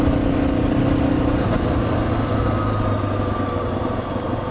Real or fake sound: real